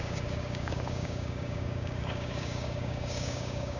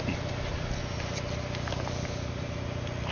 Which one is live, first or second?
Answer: second